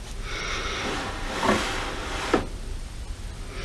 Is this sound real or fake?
real